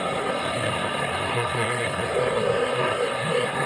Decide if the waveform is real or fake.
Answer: fake